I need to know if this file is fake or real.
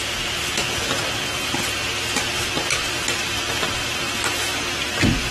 fake